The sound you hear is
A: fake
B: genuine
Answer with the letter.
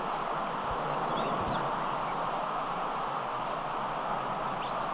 B